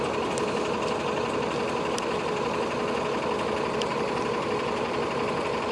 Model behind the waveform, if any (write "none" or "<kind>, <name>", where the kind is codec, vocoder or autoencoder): none